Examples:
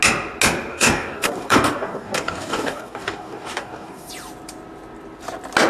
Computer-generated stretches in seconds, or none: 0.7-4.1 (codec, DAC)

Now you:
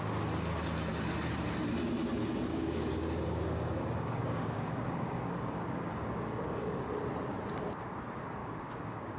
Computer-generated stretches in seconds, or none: 2.5-6.9 (codec, DAC); 8.4-9.2

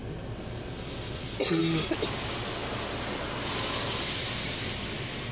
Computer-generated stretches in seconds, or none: none

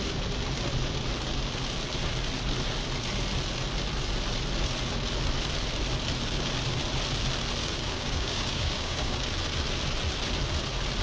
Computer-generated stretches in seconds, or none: 7.6-9.2 (codec, DAC)

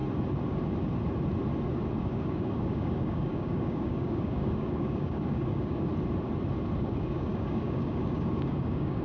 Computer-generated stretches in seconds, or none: 2.0-5.9 (codec, DAC); 6.8-9.0

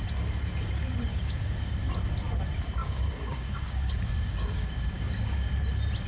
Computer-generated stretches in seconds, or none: 1.1-1.9 (codec, DAC); 2.8-5.5

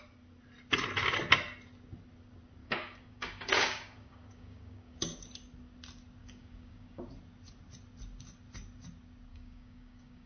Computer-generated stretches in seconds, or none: 2.6-5.0 (codec, DAC); 6.2-7.0; 9.3-10.3